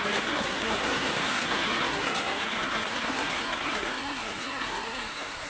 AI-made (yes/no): yes